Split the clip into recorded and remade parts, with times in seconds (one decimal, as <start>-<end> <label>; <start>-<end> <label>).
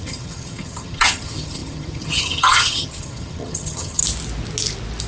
0.0-4.0 remade; 4.0-5.1 recorded